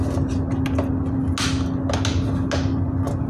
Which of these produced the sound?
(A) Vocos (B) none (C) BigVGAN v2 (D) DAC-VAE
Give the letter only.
B